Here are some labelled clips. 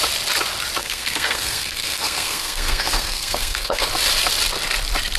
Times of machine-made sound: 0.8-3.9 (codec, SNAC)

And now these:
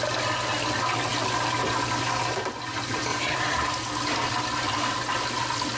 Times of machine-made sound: 3.1-3.8 (vocoder, BigVGAN v2)